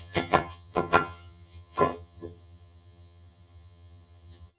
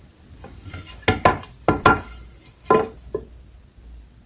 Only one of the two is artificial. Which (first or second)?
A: first